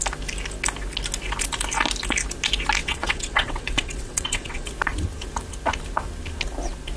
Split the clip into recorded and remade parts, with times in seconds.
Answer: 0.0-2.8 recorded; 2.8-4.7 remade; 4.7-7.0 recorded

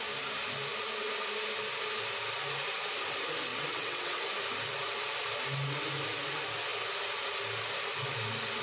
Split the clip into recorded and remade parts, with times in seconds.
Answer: 0.0-3.5 recorded; 3.5-4.2 remade; 4.2-8.6 recorded

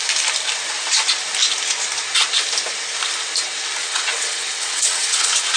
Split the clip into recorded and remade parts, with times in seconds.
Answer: 0.0-3.8 recorded; 3.8-5.6 remade

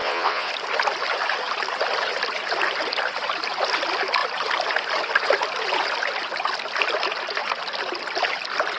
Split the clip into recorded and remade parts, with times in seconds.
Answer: 0.0-0.5 remade; 0.5-8.8 recorded

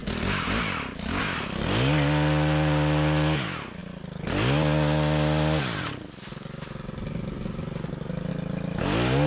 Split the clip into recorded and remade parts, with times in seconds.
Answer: 0.0-9.3 recorded

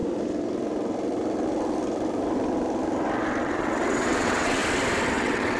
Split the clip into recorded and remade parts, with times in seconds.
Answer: 0.0-3.4 recorded; 3.4-4.6 remade; 4.6-5.1 recorded; 5.1-5.6 remade